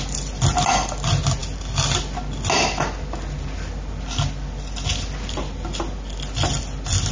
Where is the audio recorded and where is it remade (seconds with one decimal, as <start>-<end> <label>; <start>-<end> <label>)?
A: 0.0-7.1 recorded

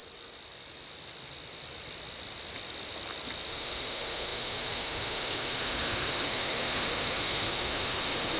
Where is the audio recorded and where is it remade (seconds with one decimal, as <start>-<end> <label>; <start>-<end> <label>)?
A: 0.0-3.5 recorded; 3.5-8.4 remade

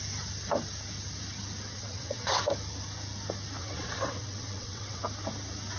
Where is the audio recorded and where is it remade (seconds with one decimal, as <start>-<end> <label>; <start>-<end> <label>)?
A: 0.0-1.7 recorded; 1.7-2.4 remade; 2.4-3.6 recorded; 3.6-5.0 remade; 5.0-5.8 recorded

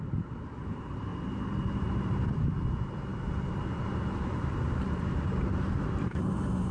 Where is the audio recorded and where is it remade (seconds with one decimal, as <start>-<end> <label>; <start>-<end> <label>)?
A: 0.0-1.1 remade; 1.1-1.7 recorded; 1.7-6.7 remade

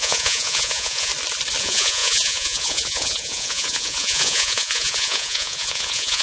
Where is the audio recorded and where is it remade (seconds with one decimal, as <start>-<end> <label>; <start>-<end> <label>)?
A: 0.0-1.1 remade; 1.1-1.6 recorded; 1.6-6.2 remade

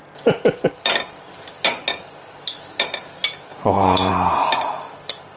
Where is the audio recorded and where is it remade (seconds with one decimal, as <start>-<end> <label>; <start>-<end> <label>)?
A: 0.0-3.5 recorded; 3.5-4.1 remade; 4.1-5.4 recorded

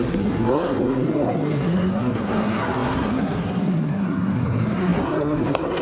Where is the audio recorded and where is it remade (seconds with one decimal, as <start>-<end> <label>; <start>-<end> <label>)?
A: 0.0-5.8 remade